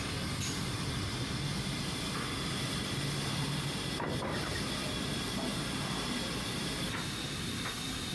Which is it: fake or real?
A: real